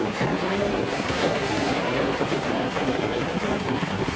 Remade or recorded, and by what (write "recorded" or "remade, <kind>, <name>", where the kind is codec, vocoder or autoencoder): remade, codec, SNAC